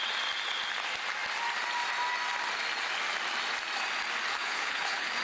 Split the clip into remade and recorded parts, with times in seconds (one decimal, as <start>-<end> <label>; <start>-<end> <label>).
0.0-4.3 recorded; 4.3-5.2 remade